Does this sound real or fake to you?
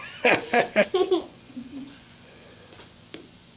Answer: fake